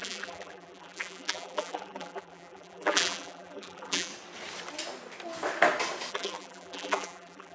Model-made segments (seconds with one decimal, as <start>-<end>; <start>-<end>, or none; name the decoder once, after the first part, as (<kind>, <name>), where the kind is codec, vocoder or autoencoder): 0.0-4.1 (vocoder, BigVGAN v2); 6.1-7.5